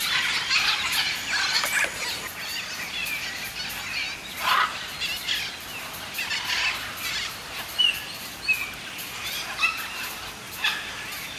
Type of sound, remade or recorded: recorded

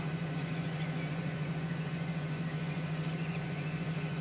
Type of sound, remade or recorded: remade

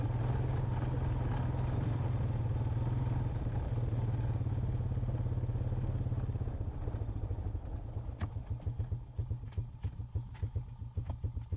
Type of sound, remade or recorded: recorded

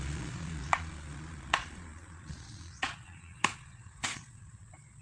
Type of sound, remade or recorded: remade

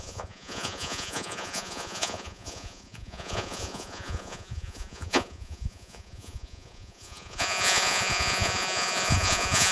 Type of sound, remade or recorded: remade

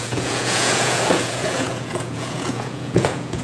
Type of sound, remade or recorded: remade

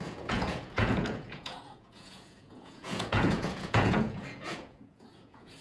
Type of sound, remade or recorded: remade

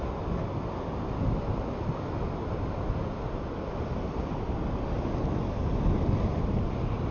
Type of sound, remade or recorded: recorded